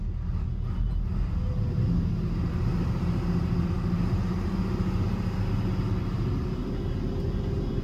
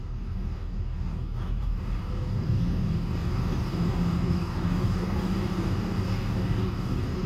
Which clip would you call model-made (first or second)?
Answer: second